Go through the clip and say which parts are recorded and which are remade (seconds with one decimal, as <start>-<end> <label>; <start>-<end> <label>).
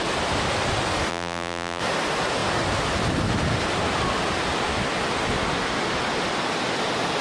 0.0-1.1 recorded; 1.1-1.8 remade; 1.8-7.2 recorded